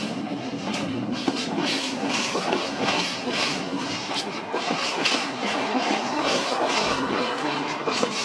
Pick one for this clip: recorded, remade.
remade